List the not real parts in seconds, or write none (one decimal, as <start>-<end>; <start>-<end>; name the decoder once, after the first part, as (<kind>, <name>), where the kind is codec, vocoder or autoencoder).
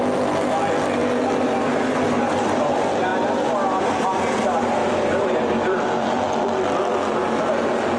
1.0-2.6 (vocoder, BigVGAN v2); 4.8-7.4